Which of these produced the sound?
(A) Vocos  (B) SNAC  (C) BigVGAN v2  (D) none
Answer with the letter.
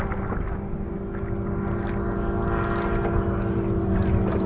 D